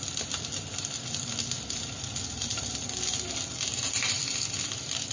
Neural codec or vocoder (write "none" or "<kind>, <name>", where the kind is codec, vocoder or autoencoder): none